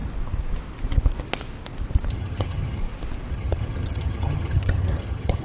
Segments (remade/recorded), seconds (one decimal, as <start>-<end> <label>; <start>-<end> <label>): 0.0-2.1 recorded; 2.1-2.8 remade; 2.8-3.3 recorded; 3.3-5.4 remade